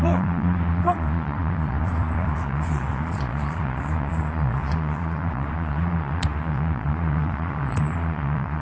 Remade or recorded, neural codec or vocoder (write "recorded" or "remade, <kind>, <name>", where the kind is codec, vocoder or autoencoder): remade, vocoder, Vocos